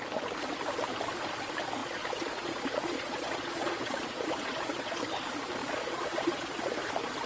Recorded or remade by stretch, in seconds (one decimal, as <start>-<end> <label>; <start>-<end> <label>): 0.0-1.8 recorded; 1.8-5.0 remade; 5.0-5.6 recorded; 5.6-6.7 remade; 6.7-7.3 recorded